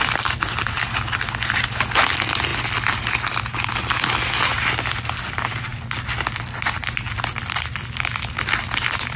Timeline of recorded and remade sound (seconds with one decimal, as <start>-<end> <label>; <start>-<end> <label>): 0.0-9.2 recorded